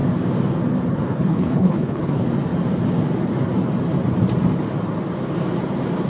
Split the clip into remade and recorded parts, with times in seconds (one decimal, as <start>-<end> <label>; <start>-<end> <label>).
0.0-0.9 recorded; 0.9-2.2 remade; 2.2-6.1 recorded